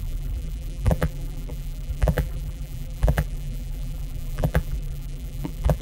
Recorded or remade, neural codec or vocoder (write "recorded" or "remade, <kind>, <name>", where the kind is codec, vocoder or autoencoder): remade, vocoder, BigVGAN v2